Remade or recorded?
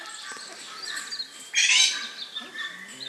recorded